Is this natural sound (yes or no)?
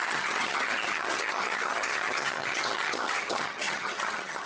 no